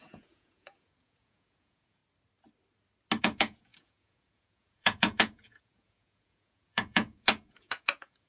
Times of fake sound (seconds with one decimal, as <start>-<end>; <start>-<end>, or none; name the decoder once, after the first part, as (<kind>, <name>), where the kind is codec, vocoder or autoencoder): 0.0-2.0 (vocoder, Vocos); 3.2-8.3